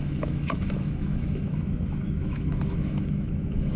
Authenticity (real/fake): fake